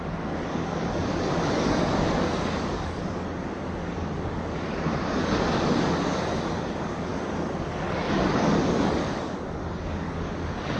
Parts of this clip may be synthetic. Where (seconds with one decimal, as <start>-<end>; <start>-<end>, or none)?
0.0-10.8